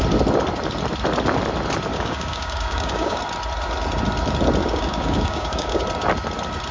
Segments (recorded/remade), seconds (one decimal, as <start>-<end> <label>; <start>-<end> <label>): 0.0-1.9 recorded; 1.9-3.2 remade; 3.2-4.6 recorded; 4.6-5.8 remade; 5.8-6.7 recorded